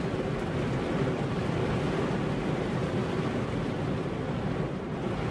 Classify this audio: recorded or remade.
recorded